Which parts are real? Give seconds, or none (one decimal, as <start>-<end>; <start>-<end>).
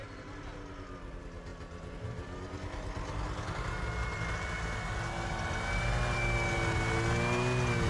0.0-7.9